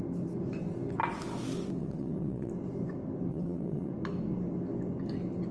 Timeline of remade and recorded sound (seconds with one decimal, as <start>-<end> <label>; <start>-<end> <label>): 0.0-1.8 recorded; 1.8-2.5 remade; 2.5-3.3 recorded; 3.3-3.9 remade; 3.9-5.5 recorded